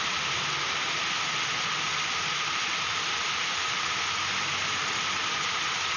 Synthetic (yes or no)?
no